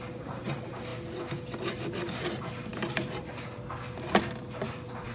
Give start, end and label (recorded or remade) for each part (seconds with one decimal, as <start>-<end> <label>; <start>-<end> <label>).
0.0-5.1 recorded